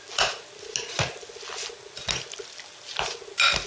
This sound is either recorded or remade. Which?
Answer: recorded